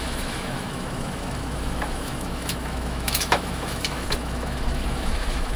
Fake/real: fake